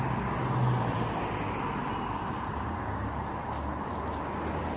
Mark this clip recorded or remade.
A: recorded